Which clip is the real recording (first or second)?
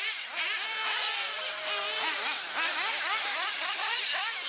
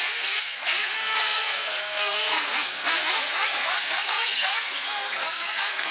first